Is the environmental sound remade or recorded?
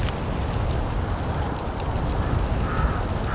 recorded